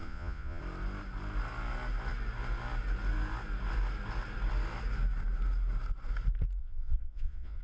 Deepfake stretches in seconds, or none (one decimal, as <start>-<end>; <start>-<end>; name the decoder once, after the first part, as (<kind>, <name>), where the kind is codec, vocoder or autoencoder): 0.0-0.6 (vocoder, Vocos); 6.6-7.6